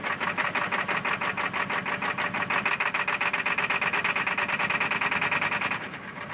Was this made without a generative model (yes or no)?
yes